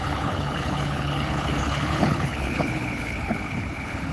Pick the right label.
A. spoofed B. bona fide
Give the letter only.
A